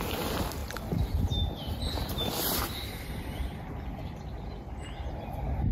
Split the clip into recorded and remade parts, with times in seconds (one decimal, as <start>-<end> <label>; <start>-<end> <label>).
0.0-5.7 recorded